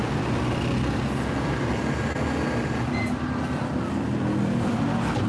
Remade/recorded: recorded